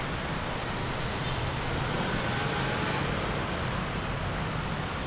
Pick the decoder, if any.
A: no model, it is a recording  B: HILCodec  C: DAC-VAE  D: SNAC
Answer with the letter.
A